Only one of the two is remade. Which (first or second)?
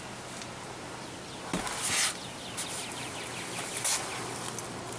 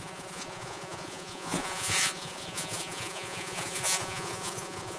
second